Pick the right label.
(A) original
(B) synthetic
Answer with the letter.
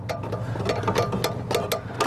A